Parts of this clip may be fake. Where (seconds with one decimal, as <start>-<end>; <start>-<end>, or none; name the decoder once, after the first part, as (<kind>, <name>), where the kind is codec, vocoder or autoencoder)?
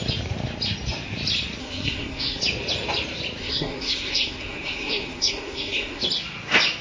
1.6-2.4 (codec, SNAC); 3.4-6.0